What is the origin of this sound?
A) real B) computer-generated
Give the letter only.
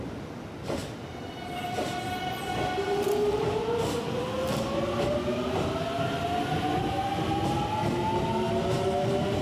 A